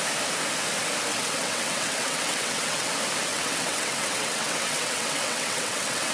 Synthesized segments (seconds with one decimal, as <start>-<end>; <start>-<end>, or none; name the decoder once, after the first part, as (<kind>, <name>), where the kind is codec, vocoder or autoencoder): 1.1-2.9 (vocoder, WaveNeXt); 3.3-6.1